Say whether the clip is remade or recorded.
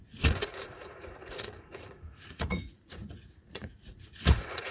remade